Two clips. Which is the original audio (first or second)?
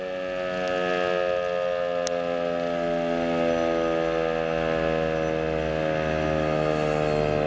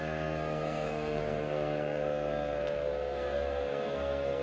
first